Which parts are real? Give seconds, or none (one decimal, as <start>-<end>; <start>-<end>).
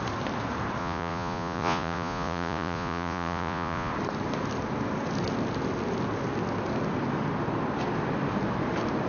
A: 0.0-0.8; 3.9-9.1